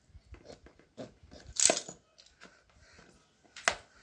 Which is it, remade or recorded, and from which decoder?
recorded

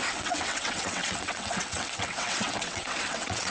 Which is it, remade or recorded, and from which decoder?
remade, vocoder, WaveNeXt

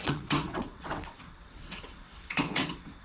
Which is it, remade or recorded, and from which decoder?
remade, vocoder, WaveNeXt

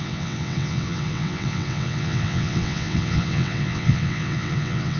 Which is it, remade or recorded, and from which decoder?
remade, vocoder, WaveNeXt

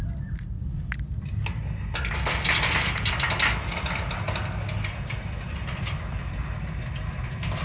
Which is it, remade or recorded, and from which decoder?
recorded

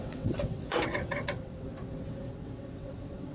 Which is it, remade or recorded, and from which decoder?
remade, vocoder, WaveNeXt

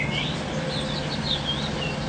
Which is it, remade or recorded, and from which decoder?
recorded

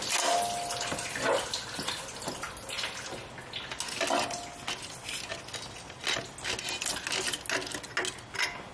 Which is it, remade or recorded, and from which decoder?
recorded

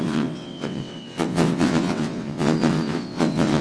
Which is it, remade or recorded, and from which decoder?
remade, vocoder, WaveNeXt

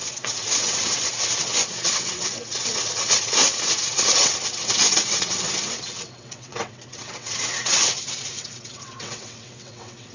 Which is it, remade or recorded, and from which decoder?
remade, vocoder, WaveNeXt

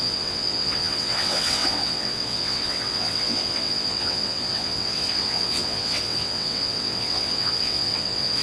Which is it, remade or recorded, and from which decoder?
remade, vocoder, WaveNeXt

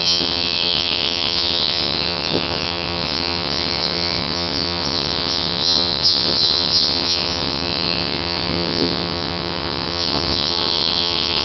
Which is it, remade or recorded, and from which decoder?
remade, vocoder, WaveNeXt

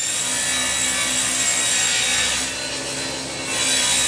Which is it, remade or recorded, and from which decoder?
recorded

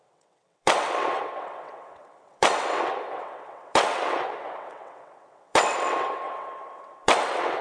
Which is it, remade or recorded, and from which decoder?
remade, vocoder, WaveNeXt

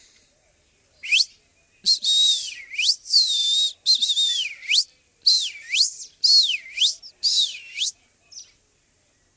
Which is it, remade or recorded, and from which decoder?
recorded